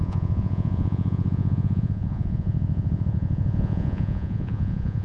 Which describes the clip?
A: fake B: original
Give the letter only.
A